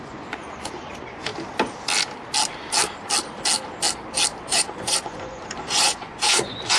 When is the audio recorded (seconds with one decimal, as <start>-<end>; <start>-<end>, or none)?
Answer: 1.3-4.4